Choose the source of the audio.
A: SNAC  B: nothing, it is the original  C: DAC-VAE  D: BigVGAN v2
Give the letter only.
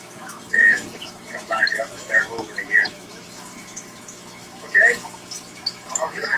C